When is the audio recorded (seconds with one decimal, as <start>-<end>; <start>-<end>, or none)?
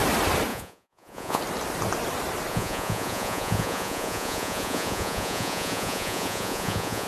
0.0-0.5; 1.4-2.5